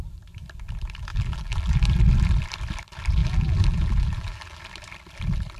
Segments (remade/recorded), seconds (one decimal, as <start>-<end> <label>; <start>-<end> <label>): 0.0-1.1 recorded; 1.1-2.0 remade; 2.0-3.2 recorded; 3.2-4.6 remade; 4.6-5.6 recorded